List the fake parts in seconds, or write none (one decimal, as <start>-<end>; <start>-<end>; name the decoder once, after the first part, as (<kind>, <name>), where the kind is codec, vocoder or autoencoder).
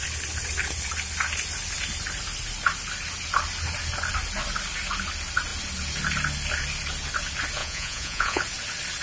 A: 7.6-8.4 (vocoder, Vocos)